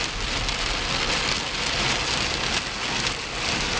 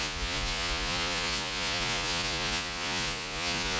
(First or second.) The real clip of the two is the first